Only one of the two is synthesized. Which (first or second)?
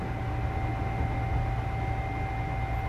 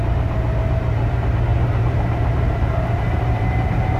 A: second